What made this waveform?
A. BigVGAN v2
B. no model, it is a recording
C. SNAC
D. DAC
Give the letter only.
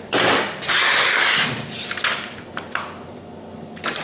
B